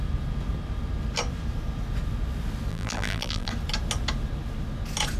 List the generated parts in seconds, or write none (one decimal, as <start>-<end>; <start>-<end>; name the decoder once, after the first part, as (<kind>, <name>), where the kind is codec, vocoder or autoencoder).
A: 2.7-3.5 (vocoder, BigVGAN v2)